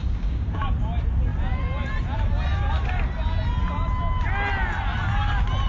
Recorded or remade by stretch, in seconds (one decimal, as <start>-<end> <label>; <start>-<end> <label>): 0.0-0.6 remade; 0.6-5.7 recorded